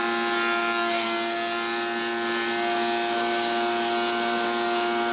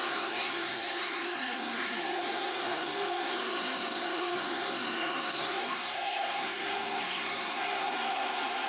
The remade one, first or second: second